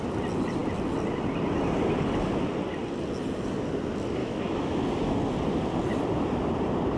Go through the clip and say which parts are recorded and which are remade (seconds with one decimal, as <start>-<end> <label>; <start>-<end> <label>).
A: 0.0-4.2 recorded; 4.2-4.8 remade; 4.8-7.0 recorded